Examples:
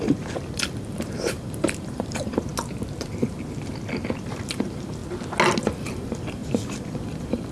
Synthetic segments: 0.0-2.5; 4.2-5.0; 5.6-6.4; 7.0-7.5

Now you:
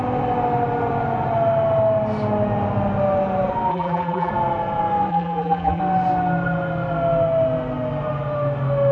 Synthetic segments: 3.7-4.3; 5.1-5.8

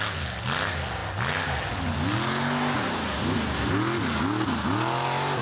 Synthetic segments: none

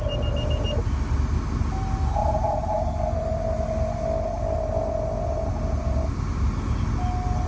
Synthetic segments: 2.2-3.2